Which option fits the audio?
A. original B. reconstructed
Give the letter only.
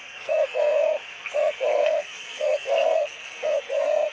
B